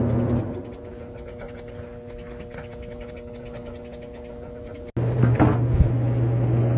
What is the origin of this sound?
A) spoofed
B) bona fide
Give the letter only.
B